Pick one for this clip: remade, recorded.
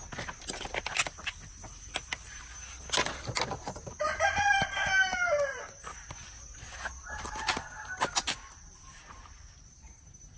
recorded